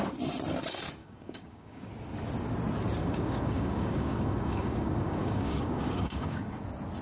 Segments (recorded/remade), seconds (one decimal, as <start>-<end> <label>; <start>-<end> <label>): 0.0-1.0 recorded; 1.0-1.9 remade; 1.9-3.0 recorded; 3.0-6.6 remade; 6.6-7.0 recorded